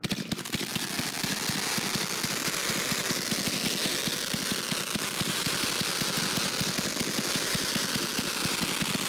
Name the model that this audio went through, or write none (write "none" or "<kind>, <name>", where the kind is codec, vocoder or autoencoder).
none